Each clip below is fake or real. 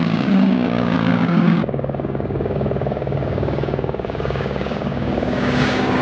fake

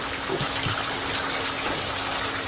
real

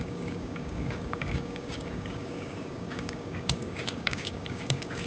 fake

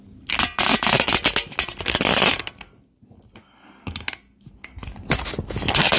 real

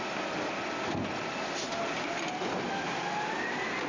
real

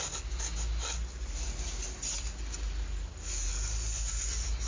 real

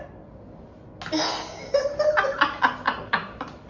real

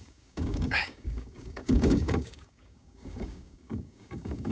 fake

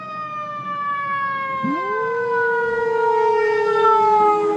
fake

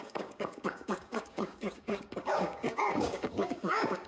fake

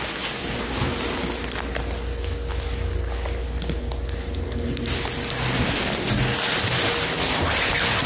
real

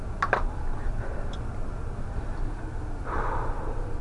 real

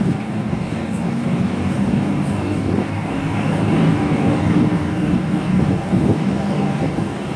fake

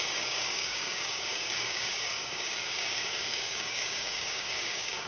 fake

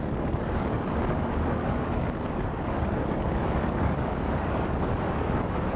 fake